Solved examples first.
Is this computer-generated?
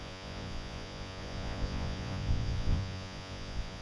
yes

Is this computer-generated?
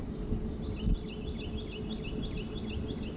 no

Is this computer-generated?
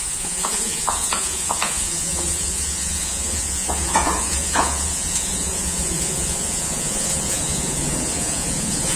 yes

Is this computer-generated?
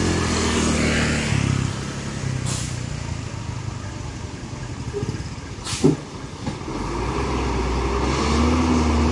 no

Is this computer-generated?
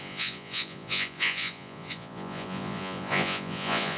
yes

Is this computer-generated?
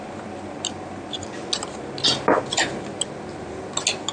no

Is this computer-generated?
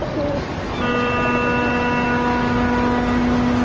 no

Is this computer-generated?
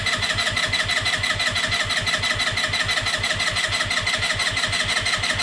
no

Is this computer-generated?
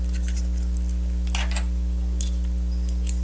no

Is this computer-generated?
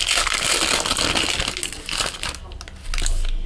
no